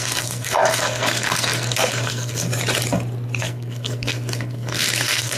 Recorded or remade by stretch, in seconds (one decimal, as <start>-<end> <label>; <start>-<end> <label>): 0.0-2.5 remade; 2.5-3.4 recorded; 3.4-5.4 remade